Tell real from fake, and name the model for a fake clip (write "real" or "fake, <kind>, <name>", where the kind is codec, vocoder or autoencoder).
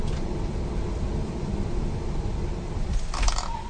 real